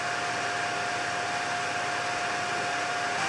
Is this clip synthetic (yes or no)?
no